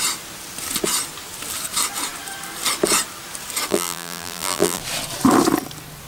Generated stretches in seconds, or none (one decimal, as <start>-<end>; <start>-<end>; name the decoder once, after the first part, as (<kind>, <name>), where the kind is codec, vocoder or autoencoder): 3.7-4.8 (vocoder, BigVGAN v2)